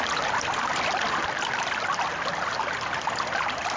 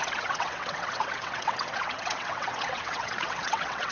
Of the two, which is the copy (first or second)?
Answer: second